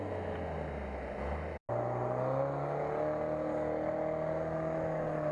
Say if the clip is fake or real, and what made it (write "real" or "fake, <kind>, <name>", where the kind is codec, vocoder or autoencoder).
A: real